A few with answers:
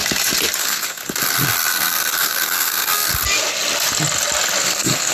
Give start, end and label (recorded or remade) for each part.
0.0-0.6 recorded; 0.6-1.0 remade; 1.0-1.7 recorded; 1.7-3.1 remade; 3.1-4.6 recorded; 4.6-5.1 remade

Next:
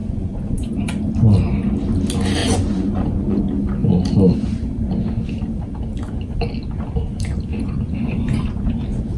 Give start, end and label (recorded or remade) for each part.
0.0-0.8 remade; 0.8-2.4 recorded; 2.4-3.4 remade; 3.4-7.5 recorded; 7.5-8.7 remade; 8.7-9.2 recorded

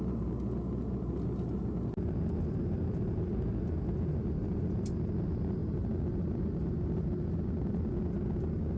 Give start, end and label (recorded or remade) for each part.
0.0-8.8 recorded

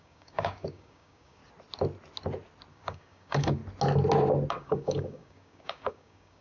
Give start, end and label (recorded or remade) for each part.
0.0-1.4 remade; 1.4-2.7 recorded; 2.7-3.6 remade; 3.6-4.5 recorded; 4.5-6.4 remade

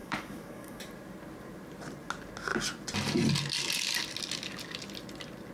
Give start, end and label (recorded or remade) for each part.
0.0-0.8 remade; 0.8-5.5 recorded